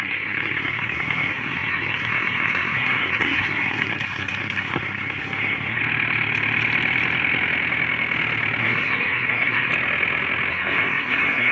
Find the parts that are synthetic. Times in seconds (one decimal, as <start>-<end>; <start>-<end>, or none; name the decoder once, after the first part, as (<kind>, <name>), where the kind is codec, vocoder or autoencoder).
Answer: 0.0-5.8 (codec, SNAC); 8.6-9.7; 10.5-11.5